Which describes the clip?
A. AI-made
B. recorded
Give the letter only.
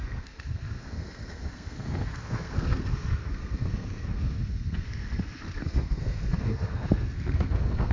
A